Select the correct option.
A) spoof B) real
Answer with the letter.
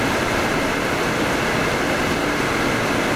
B